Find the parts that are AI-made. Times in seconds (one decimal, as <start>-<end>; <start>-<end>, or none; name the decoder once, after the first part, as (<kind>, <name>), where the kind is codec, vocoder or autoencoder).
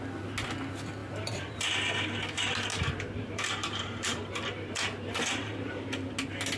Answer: 1.0-1.7 (vocoder, BigVGAN v2); 2.7-6.1